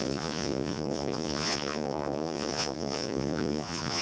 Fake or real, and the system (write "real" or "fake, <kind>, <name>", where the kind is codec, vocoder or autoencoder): fake, vocoder, Vocos